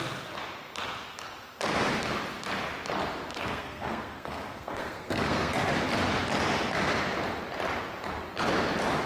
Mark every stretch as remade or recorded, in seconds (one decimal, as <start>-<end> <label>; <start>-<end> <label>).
0.0-3.3 recorded; 3.3-5.7 remade; 5.7-9.1 recorded